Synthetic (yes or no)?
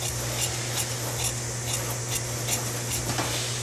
no